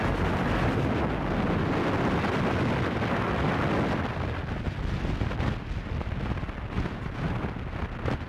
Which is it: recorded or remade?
recorded